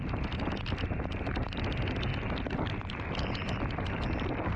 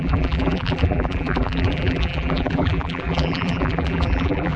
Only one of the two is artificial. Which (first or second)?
second